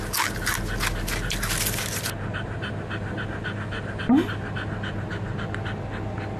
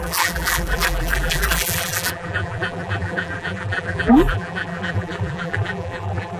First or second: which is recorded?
first